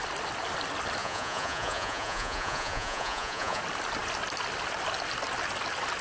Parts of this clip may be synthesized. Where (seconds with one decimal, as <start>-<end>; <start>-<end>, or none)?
1.0-3.6